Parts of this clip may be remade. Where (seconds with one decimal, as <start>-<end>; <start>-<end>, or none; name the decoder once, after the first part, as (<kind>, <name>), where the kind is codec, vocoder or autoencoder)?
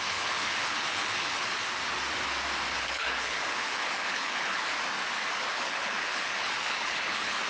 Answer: 0.0-1.6 (codec, HILCodec); 2.7-4.7; 5.5-7.5